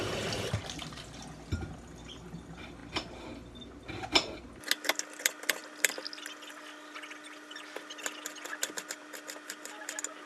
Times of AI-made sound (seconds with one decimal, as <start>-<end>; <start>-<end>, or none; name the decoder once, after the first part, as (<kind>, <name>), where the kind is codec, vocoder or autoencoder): none